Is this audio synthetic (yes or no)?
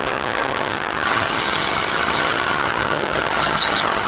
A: yes